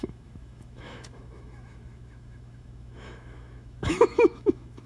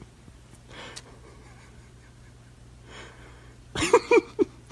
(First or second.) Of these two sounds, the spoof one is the first